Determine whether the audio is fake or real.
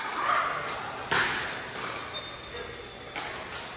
real